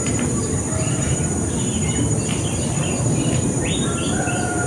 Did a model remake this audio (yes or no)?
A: no